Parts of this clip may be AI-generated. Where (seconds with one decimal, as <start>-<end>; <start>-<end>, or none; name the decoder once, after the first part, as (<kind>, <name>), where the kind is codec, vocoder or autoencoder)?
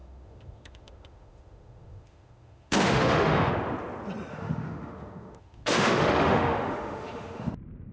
0.0-3.5 (autoencoder, DAC-VAE); 4.3-7.5